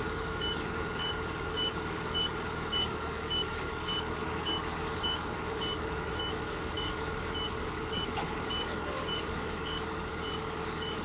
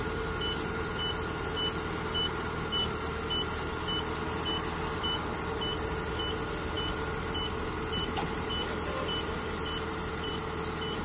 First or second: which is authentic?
second